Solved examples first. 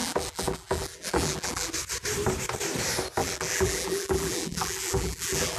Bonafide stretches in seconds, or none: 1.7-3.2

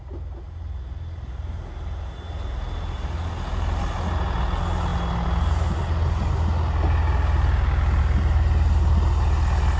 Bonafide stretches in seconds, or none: 0.0-9.8

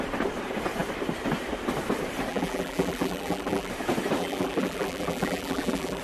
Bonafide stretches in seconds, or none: 0.0-2.3; 3.7-4.2

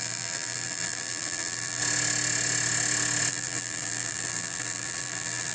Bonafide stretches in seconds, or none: 1.8-3.3

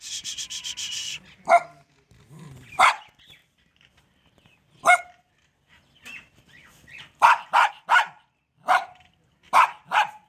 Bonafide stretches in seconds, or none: 3.4-7.7

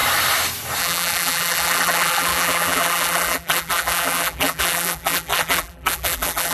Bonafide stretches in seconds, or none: 0.0-0.8

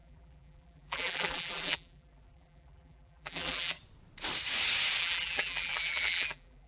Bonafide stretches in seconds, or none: 3.8-5.0

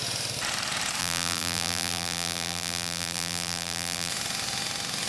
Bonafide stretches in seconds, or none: 0.0-1.0; 4.1-5.1